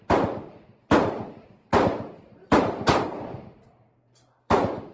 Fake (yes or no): yes